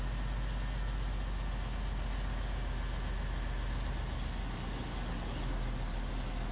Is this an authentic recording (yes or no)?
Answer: yes